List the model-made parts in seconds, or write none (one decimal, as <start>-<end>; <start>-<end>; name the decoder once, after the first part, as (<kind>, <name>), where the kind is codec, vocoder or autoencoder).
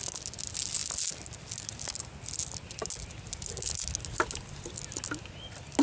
none